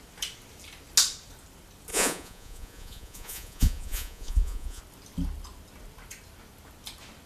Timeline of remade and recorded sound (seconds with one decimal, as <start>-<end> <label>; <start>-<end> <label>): 0.0-1.9 recorded; 1.9-4.8 remade; 4.8-7.3 recorded